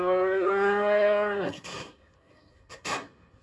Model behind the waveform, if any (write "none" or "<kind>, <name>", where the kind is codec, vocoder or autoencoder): codec, SNAC